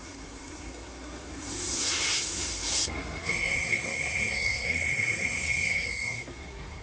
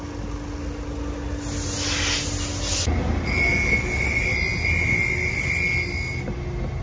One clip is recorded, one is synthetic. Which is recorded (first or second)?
second